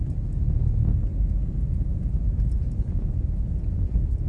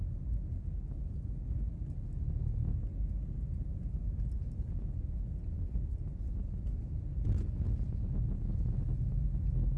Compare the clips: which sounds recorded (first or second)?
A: second